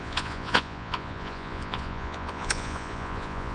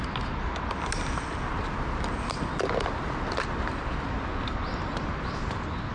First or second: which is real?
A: second